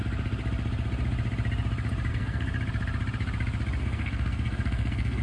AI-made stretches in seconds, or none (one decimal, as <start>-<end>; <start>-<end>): 2.1-2.5; 3.8-5.2